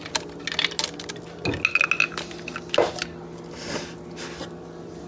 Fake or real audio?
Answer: real